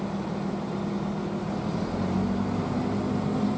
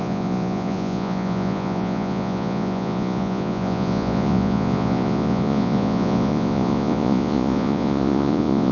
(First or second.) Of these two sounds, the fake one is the second